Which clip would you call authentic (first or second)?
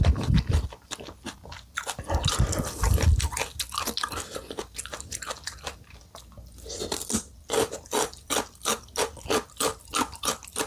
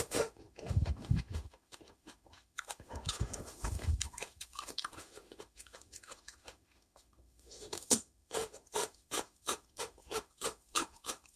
first